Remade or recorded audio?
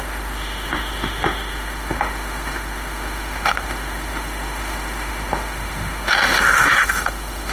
remade